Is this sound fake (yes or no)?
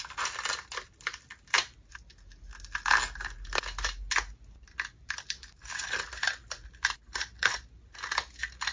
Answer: no